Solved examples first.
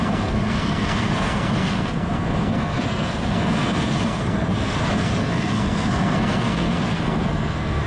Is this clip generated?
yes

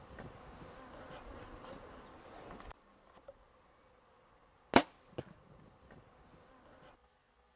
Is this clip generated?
no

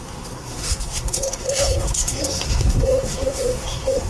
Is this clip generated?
yes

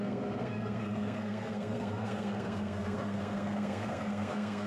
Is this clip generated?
yes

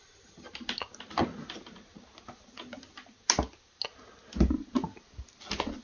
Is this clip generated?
no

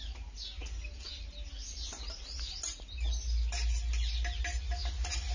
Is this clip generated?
no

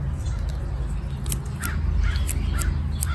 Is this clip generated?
no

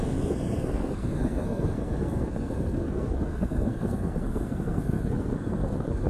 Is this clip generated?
yes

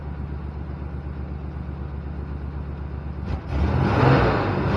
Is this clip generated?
no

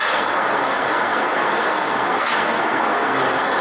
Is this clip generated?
yes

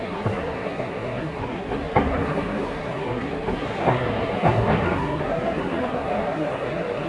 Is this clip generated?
yes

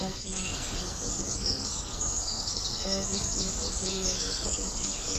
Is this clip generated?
yes